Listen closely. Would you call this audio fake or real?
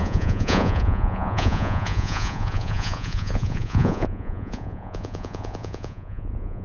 fake